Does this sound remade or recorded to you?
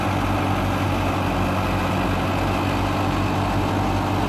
recorded